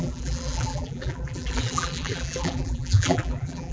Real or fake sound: fake